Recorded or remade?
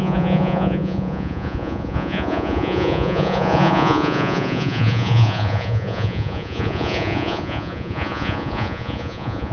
remade